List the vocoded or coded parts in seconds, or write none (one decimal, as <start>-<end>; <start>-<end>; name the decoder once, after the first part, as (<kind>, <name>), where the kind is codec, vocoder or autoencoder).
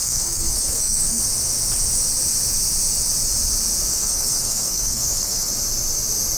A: 0.0-1.2 (codec, SNAC); 3.9-5.5